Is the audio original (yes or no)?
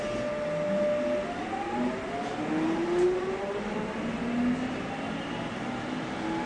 yes